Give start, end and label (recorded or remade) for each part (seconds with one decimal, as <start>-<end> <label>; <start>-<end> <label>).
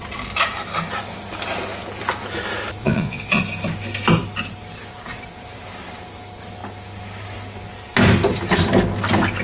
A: 0.0-2.8 recorded; 2.8-3.4 remade; 3.4-9.4 recorded